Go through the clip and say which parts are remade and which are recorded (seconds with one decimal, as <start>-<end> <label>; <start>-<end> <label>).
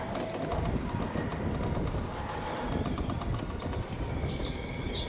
0.0-5.1 recorded